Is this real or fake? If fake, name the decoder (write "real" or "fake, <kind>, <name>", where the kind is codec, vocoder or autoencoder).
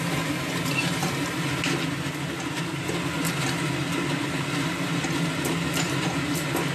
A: real